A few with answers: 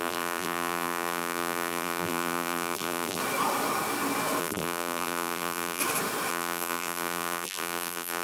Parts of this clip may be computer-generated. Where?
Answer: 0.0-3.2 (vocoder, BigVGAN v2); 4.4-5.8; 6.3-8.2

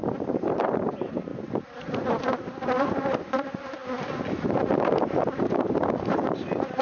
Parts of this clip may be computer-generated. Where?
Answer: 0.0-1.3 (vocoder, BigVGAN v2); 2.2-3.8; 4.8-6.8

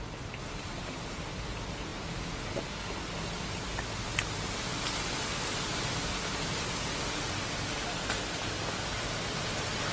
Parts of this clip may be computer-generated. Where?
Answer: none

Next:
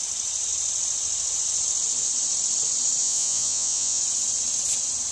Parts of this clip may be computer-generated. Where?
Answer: 3.0-4.0 (vocoder, Vocos)

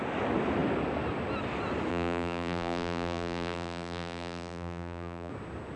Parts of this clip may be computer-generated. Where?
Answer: 1.9-5.3 (vocoder, BigVGAN v2)